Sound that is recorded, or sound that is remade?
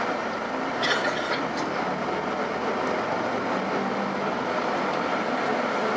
recorded